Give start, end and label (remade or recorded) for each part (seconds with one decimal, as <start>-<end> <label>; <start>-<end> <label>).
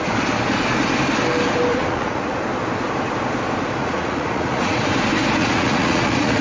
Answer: 0.0-1.7 recorded; 1.7-2.4 remade; 2.4-3.8 recorded; 3.8-4.8 remade; 4.8-5.4 recorded; 5.4-6.4 remade